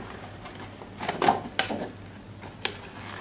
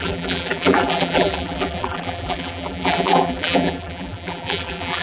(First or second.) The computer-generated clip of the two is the second